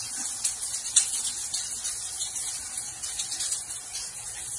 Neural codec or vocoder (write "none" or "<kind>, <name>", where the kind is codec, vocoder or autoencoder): none